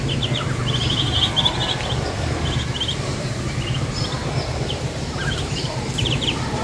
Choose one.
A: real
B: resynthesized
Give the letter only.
B